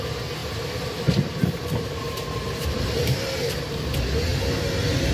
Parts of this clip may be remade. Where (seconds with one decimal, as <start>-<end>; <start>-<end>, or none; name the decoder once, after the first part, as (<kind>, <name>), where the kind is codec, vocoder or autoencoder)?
0.4-3.5 (vocoder, BigVGAN v2); 4.3-5.1